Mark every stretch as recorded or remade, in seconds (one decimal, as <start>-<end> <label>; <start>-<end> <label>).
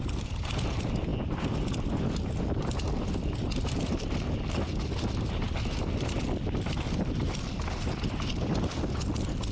0.0-9.5 recorded